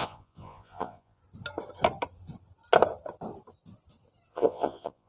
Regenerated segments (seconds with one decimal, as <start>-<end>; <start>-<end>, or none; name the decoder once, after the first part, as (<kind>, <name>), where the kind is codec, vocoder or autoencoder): 0.0-1.2 (vocoder, Vocos); 4.3-5.1